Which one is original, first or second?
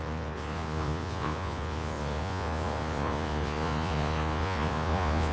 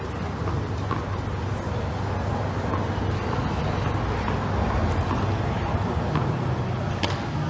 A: second